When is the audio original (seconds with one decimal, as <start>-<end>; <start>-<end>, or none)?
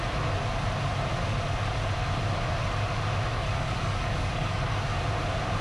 0.0-3.3; 5.0-5.6